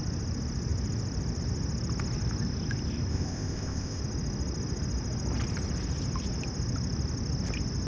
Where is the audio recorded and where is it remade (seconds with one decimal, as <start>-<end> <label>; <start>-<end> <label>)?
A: 0.0-3.1 recorded; 3.1-4.0 remade; 4.0-7.9 recorded